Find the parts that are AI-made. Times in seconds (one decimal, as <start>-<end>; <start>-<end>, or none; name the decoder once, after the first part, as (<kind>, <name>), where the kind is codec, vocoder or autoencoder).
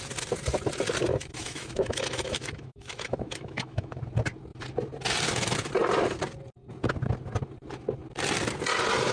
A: 1.0-4.0 (autoencoder, DAC-VAE)